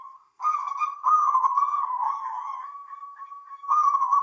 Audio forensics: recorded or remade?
remade